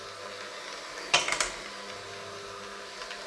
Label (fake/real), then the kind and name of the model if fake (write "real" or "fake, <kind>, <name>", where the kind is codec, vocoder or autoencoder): real